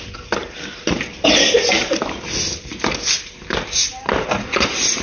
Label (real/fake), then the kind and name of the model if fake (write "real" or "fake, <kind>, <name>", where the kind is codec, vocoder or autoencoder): real